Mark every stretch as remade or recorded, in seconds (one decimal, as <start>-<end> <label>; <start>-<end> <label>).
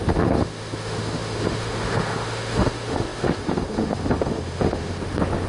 0.0-5.5 remade